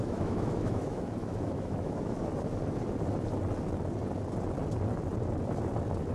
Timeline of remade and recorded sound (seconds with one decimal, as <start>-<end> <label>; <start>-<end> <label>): 0.0-2.3 remade; 2.3-6.1 recorded